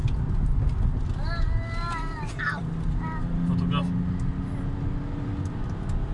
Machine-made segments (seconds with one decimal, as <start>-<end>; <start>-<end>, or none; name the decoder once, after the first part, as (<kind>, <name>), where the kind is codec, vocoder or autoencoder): none